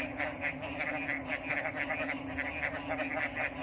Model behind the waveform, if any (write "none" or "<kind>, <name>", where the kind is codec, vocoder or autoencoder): none